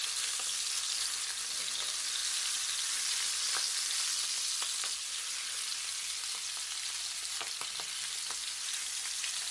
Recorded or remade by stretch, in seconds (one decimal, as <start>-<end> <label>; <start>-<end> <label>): 0.0-9.5 recorded